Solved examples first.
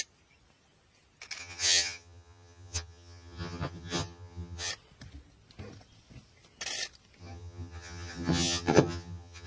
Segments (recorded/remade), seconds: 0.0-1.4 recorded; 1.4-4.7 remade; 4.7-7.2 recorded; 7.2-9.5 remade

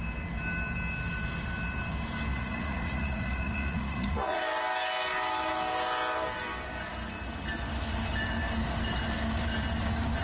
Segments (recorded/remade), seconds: 0.0-2.3 recorded; 2.3-4.4 remade; 4.4-10.2 recorded

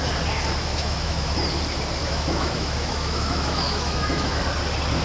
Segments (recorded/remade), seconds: 0.0-0.7 recorded; 0.7-1.3 remade; 1.3-2.0 recorded; 2.0-4.4 remade; 4.4-5.0 recorded

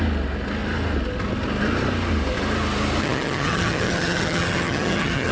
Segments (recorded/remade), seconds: 0.0-3.0 recorded; 3.0-5.3 remade

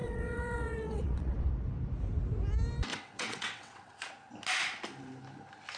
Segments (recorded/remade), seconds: 0.0-1.5 remade; 1.5-2.9 recorded; 2.9-4.1 remade; 4.1-5.8 recorded